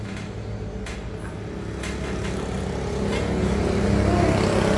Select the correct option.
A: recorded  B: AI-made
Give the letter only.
A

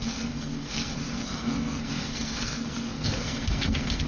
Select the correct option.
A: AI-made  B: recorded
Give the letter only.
A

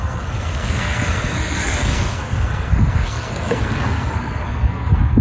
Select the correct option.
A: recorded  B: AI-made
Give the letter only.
B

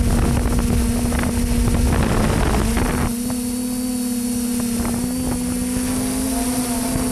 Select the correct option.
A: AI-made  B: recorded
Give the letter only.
B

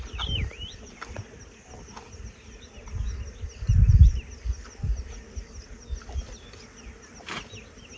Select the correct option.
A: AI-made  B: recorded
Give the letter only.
B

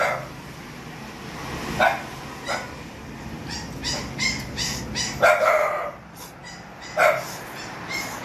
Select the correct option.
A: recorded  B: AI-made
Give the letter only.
A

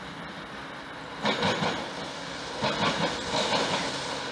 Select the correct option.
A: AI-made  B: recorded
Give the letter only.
B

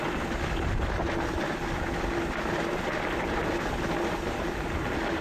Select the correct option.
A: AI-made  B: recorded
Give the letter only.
B